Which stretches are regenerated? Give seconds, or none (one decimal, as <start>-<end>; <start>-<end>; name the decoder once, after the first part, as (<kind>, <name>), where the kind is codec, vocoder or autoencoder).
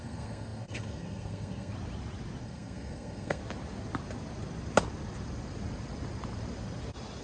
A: 0.0-1.7 (codec, SNAC); 2.4-3.4